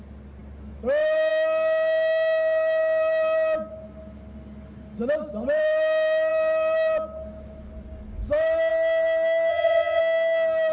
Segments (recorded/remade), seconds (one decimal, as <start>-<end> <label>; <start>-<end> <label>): 0.0-9.5 recorded; 9.5-10.0 remade; 10.0-10.7 recorded